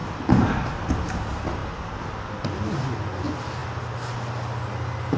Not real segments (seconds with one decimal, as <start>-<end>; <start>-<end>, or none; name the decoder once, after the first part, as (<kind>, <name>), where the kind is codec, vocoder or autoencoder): none